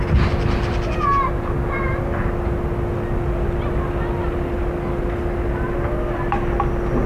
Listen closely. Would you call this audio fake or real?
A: real